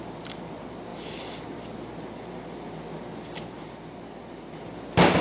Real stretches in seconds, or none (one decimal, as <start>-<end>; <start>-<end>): 0.0-5.2